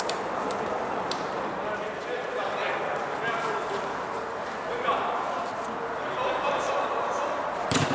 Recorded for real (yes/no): yes